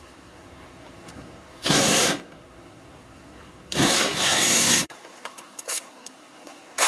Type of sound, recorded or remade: remade